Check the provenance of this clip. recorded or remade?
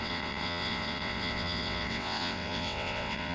remade